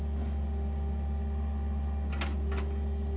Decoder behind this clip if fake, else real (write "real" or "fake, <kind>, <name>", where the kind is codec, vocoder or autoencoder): real